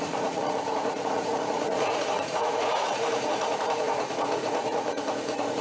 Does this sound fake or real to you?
fake